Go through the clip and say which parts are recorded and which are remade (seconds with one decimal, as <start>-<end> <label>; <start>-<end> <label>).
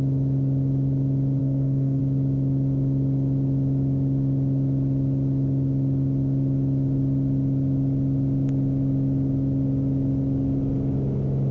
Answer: 0.0-1.4 recorded; 1.4-2.0 remade; 2.0-11.5 recorded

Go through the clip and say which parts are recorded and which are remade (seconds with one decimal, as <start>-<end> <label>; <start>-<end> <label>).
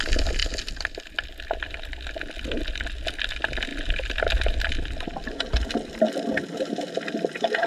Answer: 0.0-7.7 recorded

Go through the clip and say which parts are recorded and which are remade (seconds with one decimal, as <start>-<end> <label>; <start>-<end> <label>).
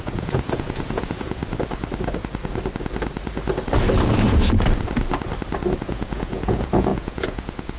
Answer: 0.0-1.4 remade; 1.4-5.8 recorded; 5.8-7.8 remade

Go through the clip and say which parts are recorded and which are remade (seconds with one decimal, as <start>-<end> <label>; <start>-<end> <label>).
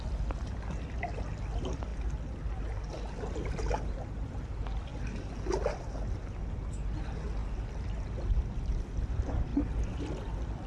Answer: 0.0-7.4 recorded; 7.4-9.1 remade; 9.1-10.7 recorded